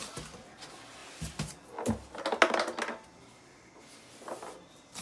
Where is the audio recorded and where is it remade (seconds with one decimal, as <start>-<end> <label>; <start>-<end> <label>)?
0.0-5.0 recorded